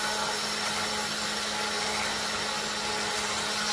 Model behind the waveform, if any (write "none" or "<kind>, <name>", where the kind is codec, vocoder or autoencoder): none